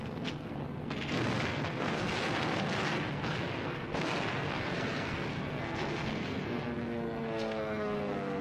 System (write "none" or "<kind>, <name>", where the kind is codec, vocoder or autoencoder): codec, SNAC